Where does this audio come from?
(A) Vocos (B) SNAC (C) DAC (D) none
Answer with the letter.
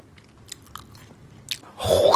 D